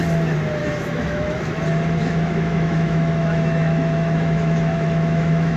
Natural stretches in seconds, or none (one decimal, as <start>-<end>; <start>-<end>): 0.0-0.6; 1.6-2.0